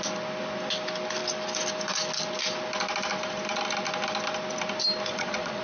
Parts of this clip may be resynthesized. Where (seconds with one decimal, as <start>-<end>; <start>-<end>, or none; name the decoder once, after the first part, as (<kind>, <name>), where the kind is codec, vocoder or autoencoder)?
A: 5.1-5.6 (vocoder, Vocos)

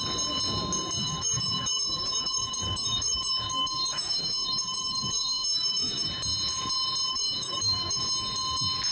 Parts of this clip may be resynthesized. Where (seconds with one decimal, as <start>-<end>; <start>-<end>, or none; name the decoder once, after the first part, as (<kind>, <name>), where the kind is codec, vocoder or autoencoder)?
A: 1.0-6.1 (autoencoder, DAC-VAE); 7.1-8.0

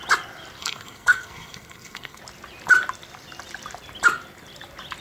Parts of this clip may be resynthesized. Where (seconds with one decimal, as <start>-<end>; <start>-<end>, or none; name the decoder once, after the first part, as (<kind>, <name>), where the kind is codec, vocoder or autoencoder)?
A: 0.6-2.2 (codec, SNAC)